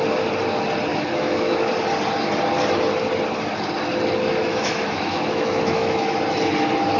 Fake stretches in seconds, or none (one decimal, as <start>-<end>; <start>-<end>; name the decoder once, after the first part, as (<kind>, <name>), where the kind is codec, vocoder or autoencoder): 0.9-1.7 (autoencoder, DAC-VAE); 4.4-6.1